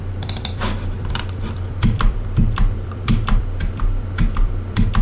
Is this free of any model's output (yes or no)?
no